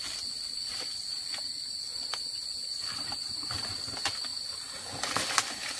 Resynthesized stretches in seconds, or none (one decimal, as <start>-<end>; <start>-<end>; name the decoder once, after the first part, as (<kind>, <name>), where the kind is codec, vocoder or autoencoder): none